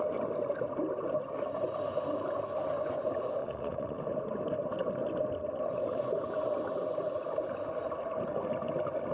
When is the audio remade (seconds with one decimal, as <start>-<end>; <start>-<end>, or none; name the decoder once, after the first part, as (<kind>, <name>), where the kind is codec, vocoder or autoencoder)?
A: 3.4-4.0 (vocoder, Vocos)